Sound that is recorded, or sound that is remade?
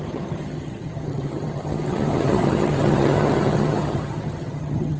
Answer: remade